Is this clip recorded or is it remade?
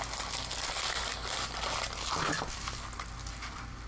recorded